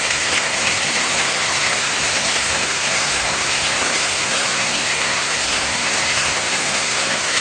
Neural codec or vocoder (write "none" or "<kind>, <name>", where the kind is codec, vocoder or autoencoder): codec, SNAC